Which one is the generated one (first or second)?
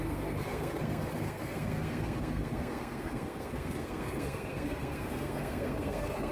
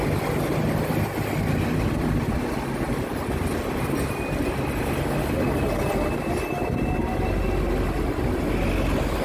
first